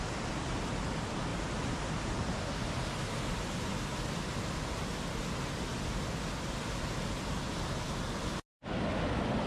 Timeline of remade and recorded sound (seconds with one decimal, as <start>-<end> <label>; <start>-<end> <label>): 0.0-1.3 recorded; 1.3-3.1 remade; 3.1-9.5 recorded